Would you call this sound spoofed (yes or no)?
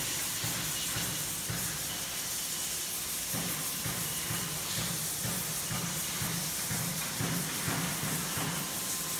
no